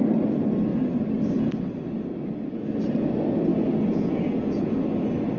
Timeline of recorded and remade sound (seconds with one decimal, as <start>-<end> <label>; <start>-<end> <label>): 0.0-3.5 recorded; 3.5-4.8 remade; 4.8-5.4 recorded